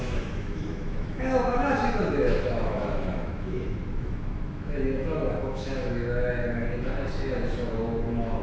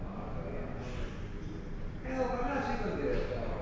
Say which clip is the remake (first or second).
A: first